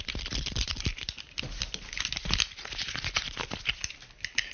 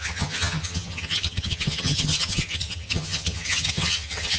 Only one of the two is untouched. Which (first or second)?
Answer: first